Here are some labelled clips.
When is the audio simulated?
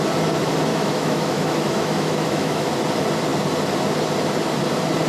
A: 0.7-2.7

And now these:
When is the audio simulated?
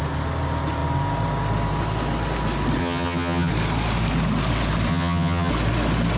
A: 2.8-3.5; 4.9-5.5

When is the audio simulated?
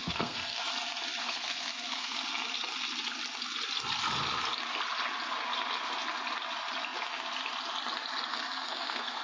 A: 0.0-0.7; 1.2-2.1; 8.3-9.2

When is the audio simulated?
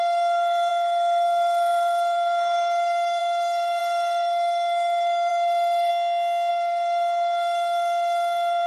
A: 0.0-5.9; 6.5-8.7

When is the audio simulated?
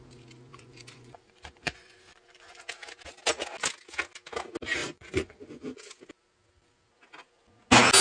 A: 0.5-2.6; 4.8-5.6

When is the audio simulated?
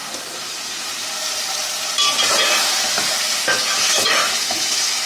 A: 3.5-5.1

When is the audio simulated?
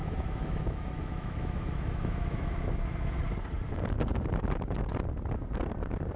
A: 0.0-3.2